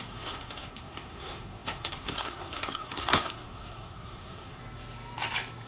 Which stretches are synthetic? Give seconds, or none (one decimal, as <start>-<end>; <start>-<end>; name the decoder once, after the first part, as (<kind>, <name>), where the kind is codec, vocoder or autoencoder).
0.0-4.6 (codec, SNAC)